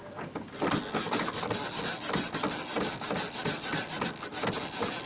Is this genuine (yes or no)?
yes